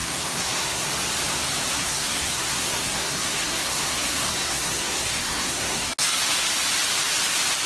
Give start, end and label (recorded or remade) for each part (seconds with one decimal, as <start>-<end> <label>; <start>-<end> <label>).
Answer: 0.0-0.9 remade; 0.9-1.7 recorded; 1.7-6.2 remade; 6.2-7.7 recorded